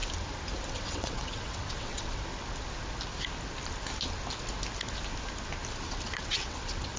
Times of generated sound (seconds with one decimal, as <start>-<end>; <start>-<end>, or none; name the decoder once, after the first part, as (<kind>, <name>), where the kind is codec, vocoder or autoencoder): 0.7-2.3 (vocoder, WaveNeXt); 5.8-7.0